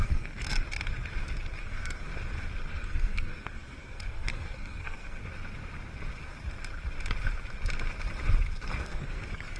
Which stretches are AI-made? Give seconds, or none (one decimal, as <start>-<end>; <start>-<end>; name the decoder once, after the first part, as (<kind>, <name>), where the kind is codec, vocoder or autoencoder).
0.0-0.4 (codec, SNAC); 1.6-2.1; 2.7-5.2; 8.8-9.6